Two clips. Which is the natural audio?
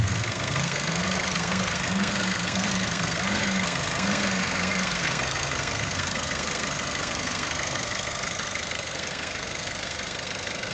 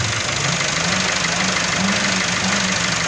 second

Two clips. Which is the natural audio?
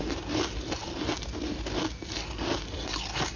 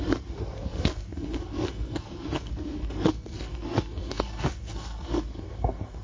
first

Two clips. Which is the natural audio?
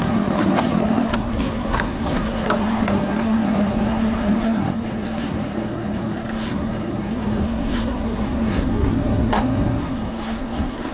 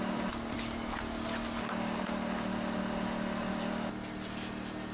second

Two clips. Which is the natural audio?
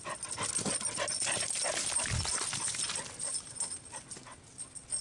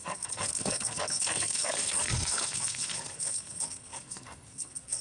first